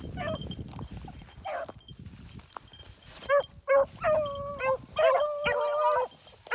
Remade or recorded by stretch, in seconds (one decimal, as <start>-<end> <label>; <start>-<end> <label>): 0.0-2.8 recorded; 2.8-3.3 remade; 3.3-6.5 recorded